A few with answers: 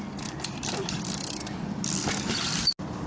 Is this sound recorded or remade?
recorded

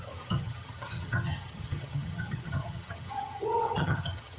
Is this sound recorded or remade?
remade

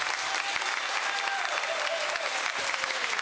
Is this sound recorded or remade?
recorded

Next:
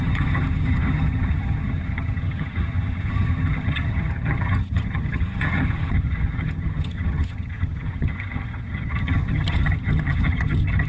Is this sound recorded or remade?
remade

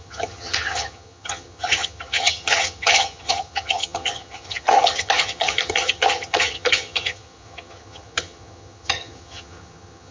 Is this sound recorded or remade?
remade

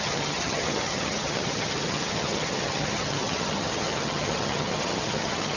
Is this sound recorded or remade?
remade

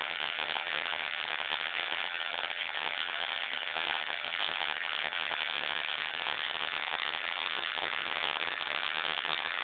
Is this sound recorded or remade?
remade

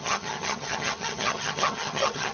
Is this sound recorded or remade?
remade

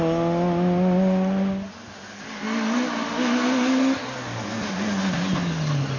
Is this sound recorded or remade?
recorded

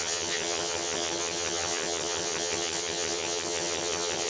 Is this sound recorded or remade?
remade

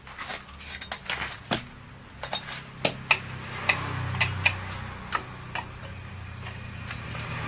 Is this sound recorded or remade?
recorded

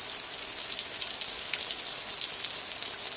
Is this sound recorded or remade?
recorded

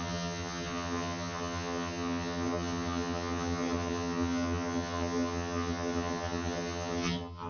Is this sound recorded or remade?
remade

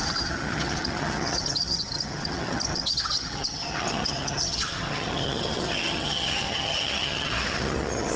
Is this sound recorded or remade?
remade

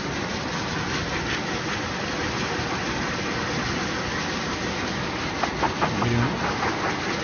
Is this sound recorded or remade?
recorded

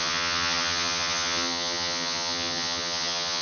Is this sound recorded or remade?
remade